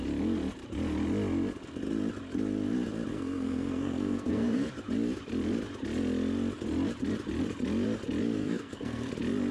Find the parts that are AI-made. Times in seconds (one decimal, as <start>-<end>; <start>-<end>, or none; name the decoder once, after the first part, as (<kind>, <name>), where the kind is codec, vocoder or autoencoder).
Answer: 3.1-4.7 (codec, SNAC); 8.4-9.1